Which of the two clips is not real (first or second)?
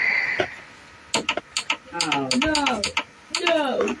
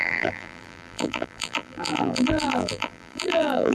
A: second